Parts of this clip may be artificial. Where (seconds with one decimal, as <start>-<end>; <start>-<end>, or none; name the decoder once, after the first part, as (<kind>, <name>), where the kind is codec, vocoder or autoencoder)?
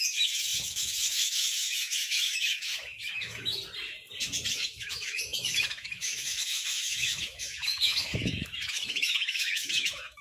0.0-3.6 (autoencoder, DAC-VAE); 4.5-10.2